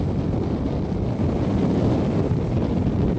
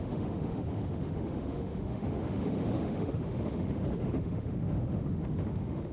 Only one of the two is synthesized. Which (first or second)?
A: second